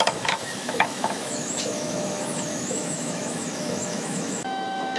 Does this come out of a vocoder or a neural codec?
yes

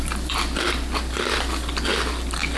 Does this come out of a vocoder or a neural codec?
no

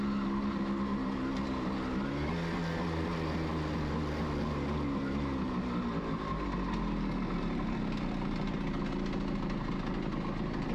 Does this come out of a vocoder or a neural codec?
no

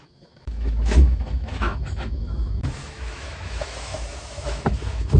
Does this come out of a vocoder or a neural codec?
yes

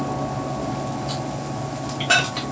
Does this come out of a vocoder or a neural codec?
no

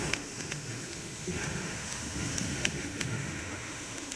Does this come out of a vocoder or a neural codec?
yes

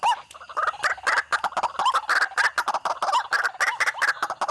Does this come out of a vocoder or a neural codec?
no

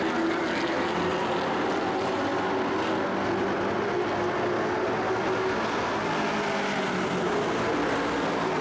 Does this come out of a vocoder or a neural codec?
no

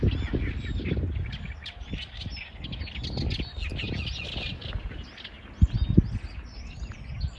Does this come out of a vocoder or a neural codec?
no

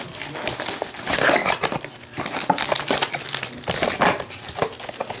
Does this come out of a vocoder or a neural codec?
no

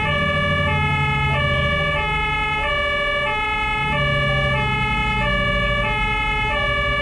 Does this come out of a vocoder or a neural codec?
no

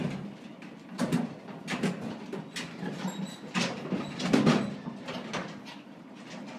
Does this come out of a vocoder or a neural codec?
no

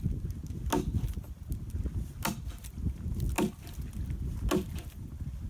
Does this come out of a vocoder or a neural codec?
no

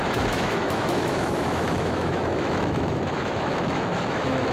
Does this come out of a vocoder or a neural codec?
yes